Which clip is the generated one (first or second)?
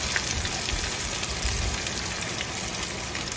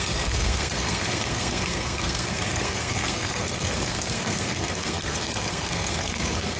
second